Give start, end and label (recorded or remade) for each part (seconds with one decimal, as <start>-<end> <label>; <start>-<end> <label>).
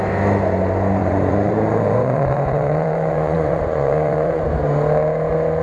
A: 0.0-1.0 recorded; 1.0-4.4 remade; 4.4-5.6 recorded